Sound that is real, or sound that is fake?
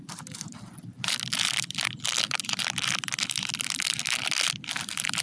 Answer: real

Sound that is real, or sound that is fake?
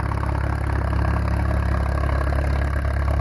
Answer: real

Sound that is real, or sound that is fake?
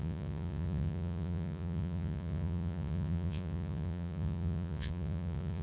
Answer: fake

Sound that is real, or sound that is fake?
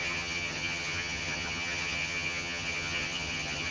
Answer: fake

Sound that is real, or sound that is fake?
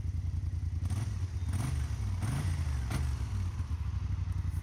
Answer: real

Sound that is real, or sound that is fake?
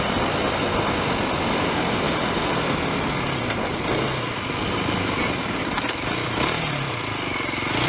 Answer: fake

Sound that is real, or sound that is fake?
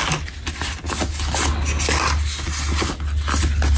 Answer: real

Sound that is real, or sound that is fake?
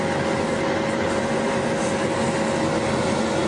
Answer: real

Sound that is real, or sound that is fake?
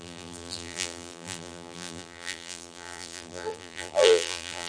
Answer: fake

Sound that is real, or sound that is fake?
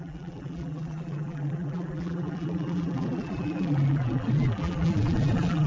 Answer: fake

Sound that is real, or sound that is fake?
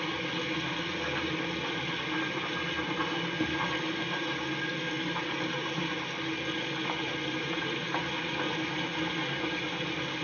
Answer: real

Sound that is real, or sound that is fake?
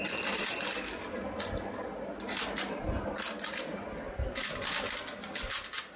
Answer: real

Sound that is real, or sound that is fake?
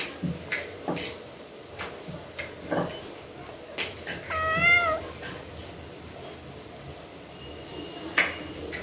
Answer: real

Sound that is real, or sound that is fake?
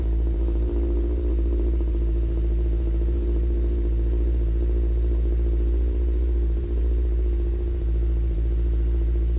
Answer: fake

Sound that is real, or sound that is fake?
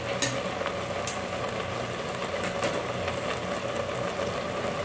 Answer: real